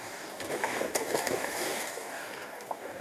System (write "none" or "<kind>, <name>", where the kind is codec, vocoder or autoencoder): codec, DAC